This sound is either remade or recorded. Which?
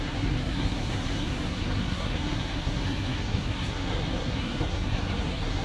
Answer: remade